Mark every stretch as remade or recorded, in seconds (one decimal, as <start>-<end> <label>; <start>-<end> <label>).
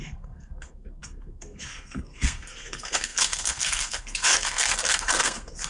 0.0-5.7 remade